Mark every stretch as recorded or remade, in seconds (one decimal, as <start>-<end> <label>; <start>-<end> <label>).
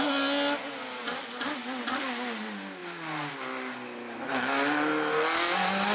0.0-5.9 recorded